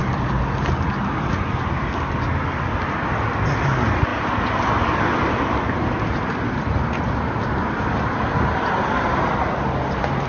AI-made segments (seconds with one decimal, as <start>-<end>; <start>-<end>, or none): none